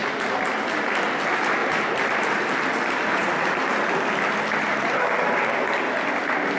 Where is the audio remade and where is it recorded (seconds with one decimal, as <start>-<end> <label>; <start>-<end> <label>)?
0.0-1.6 recorded; 1.6-4.1 remade; 4.1-4.7 recorded; 4.7-5.8 remade; 5.8-6.6 recorded